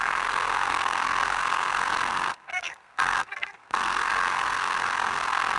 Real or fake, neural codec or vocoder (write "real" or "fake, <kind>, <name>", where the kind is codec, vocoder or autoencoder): fake, codec, SNAC